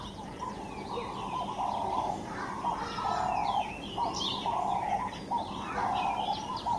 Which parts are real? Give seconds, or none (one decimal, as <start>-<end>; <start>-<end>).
0.0-6.8